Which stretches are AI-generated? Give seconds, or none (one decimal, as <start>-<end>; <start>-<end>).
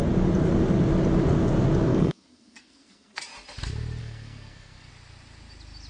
1.8-3.2; 4.0-4.9